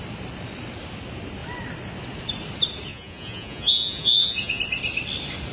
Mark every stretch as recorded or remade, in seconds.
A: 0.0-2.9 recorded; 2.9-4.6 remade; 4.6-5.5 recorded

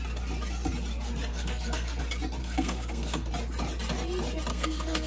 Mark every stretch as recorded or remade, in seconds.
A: 0.0-1.3 recorded; 1.3-2.0 remade; 2.0-2.4 recorded; 2.4-3.3 remade; 3.3-4.5 recorded; 4.5-5.1 remade

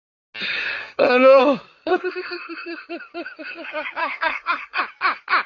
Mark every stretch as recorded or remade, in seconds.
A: 0.0-0.8 recorded; 0.8-1.4 remade; 1.4-1.9 recorded; 1.9-2.9 remade; 2.9-4.0 recorded; 4.0-4.8 remade; 4.8-5.5 recorded

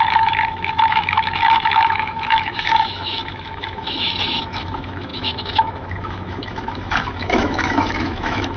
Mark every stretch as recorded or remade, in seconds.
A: 0.0-8.6 remade